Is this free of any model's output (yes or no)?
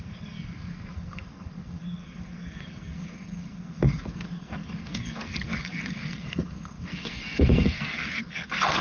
no